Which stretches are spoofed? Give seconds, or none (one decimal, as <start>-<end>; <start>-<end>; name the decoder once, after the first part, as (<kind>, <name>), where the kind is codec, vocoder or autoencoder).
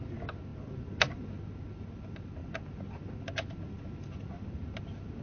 none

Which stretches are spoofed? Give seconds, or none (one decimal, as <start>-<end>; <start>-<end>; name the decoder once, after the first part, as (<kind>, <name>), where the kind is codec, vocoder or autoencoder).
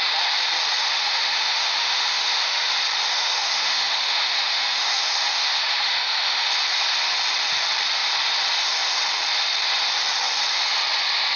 0.8-2.7 (autoencoder, DAC-VAE); 3.1-6.5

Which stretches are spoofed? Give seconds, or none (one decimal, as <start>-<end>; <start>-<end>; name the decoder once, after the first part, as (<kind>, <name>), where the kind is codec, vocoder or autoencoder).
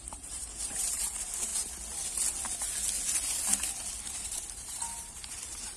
0.0-1.5 (vocoder, BigVGAN v2); 4.0-5.8